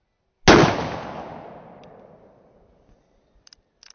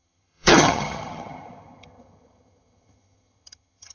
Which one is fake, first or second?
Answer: second